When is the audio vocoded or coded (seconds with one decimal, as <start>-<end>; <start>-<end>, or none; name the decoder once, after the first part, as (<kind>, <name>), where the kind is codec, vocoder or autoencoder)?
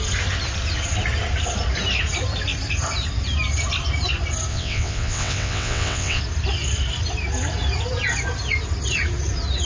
4.5-6.2 (vocoder, WaveNeXt)